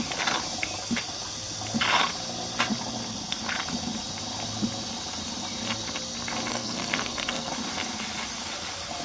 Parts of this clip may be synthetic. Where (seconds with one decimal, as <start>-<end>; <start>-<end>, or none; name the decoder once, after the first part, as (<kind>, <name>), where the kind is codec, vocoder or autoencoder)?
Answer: 6.5-7.5 (codec, SNAC)